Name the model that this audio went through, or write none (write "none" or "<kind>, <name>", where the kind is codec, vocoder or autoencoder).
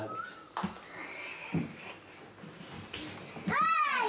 none